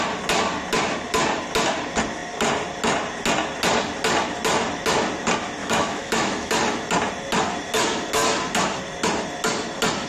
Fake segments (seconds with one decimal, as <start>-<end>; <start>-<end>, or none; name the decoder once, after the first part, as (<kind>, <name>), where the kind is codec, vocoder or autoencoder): 5.6-6.5 (autoencoder, DAC-VAE)